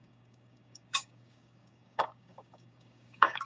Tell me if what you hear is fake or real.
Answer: fake